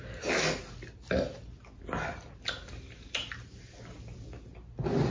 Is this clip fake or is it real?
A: real